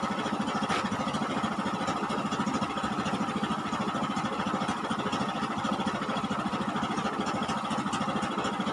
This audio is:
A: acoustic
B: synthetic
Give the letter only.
A